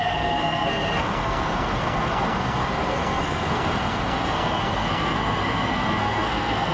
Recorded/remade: remade